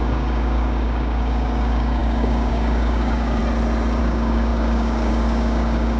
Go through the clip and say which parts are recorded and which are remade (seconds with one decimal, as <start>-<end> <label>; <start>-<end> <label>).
0.0-3.4 remade; 3.4-4.0 recorded; 4.0-6.0 remade